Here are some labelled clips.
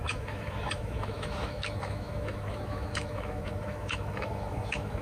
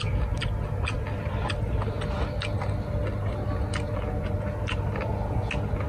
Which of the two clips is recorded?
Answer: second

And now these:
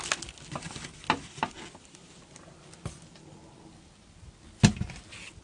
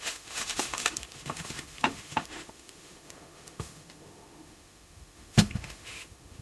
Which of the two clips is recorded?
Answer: first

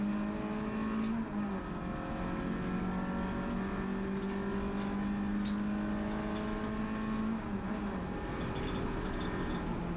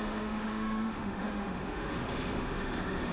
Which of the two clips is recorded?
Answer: first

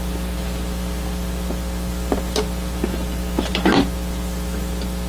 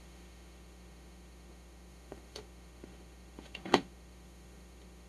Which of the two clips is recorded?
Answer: first